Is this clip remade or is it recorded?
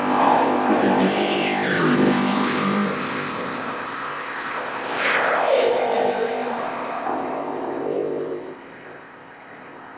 remade